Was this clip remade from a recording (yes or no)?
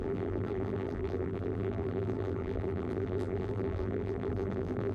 yes